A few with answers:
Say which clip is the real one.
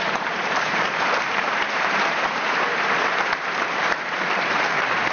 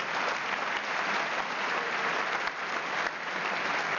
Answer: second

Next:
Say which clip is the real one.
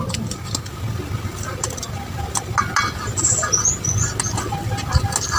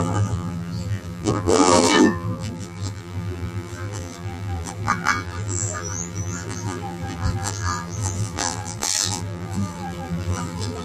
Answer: first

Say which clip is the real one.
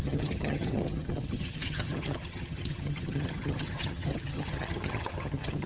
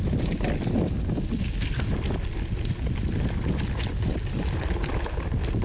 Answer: second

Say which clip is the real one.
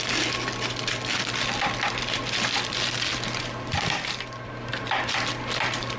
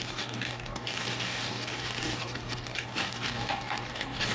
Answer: first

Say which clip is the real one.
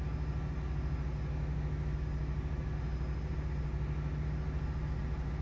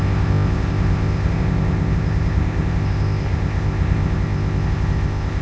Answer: first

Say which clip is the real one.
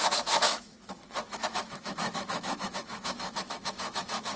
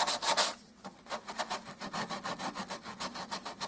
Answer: second